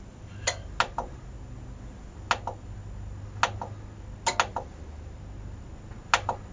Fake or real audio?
real